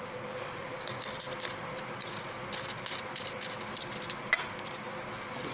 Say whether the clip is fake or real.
real